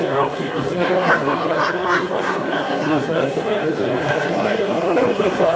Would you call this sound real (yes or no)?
no